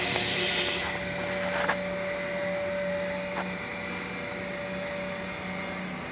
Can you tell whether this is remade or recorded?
recorded